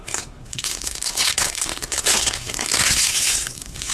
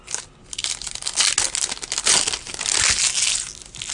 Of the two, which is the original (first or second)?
second